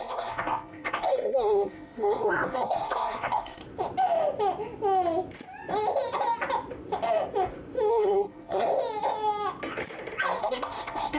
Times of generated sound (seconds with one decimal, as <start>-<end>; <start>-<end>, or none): 0.0-3.6; 7.9-8.7; 10.4-11.2